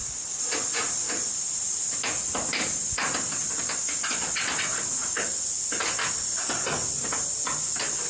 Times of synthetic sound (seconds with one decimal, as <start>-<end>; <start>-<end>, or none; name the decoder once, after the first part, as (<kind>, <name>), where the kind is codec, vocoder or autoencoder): none

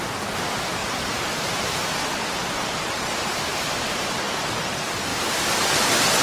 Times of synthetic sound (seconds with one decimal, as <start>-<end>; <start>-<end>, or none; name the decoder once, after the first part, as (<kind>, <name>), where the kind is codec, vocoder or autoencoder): 0.8-4.5 (vocoder, BigVGAN v2); 5.1-6.2